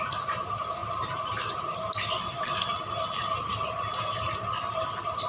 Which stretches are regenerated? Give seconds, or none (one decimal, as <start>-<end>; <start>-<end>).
0.0-0.8; 4.0-5.3